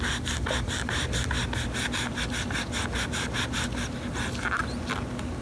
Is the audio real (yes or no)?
yes